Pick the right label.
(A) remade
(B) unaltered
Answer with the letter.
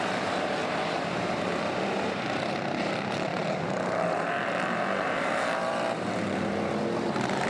A